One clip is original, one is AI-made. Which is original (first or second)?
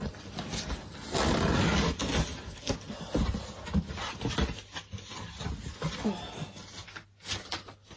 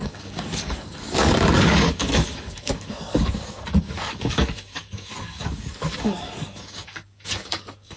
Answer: first